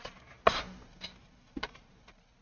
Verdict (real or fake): real